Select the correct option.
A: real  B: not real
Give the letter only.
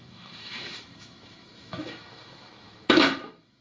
B